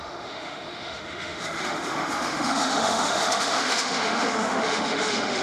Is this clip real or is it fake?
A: fake